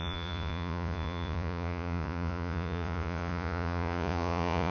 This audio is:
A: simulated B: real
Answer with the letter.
A